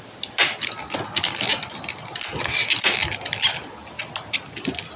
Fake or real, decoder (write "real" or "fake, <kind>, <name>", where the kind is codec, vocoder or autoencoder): real